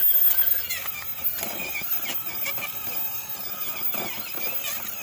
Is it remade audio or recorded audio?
recorded